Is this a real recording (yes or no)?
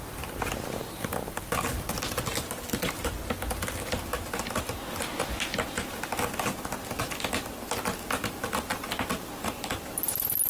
yes